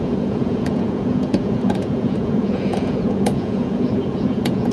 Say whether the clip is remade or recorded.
remade